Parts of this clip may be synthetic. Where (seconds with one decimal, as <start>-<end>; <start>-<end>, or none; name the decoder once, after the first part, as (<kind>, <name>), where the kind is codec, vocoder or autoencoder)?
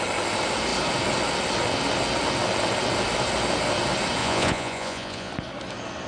4.2-5.3 (vocoder, Vocos)